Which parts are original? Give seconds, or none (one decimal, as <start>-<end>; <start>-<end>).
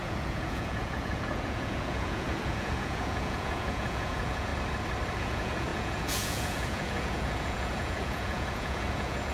4.5-5.1